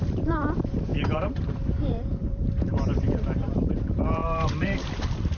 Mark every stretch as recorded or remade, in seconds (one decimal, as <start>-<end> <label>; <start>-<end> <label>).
0.0-5.4 remade